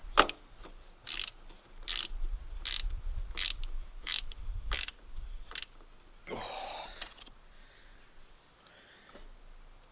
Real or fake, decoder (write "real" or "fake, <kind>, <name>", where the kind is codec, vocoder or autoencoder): real